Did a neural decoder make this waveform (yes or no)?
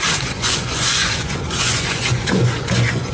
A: yes